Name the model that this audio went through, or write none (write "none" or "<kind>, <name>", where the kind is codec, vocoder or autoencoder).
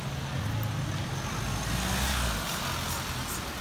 none